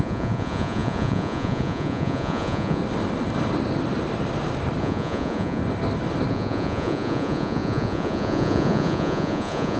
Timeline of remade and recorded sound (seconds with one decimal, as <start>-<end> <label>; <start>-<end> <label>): 0.0-2.8 remade; 2.8-4.8 recorded; 4.8-5.6 remade; 5.6-6.3 recorded; 6.3-9.8 remade